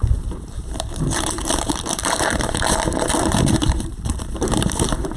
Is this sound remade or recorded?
remade